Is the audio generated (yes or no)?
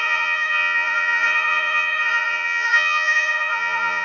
yes